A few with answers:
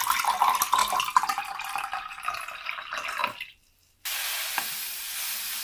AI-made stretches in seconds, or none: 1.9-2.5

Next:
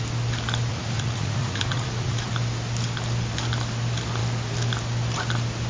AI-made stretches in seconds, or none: 0.7-2.3

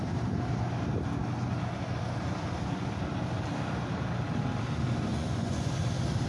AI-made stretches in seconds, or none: 5.1-5.7

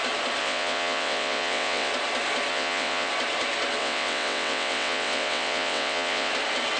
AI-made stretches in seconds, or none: 0.4-1.9; 2.5-3.1; 3.8-6.3

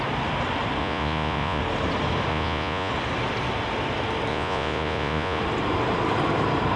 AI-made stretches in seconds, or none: 0.8-1.6; 2.3-2.9; 4.3-5.4